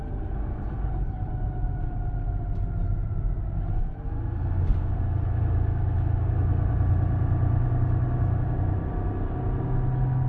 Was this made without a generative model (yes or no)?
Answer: yes